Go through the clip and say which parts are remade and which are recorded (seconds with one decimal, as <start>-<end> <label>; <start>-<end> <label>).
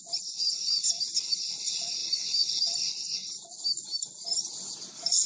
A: 0.0-5.3 recorded